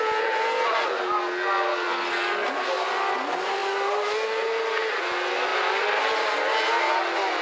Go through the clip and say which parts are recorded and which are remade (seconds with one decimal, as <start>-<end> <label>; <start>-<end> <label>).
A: 0.0-7.4 recorded